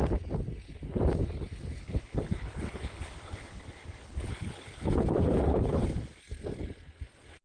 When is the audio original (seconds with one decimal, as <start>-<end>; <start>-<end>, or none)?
0.0-1.8; 6.2-7.4